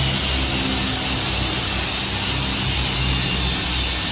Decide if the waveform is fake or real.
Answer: real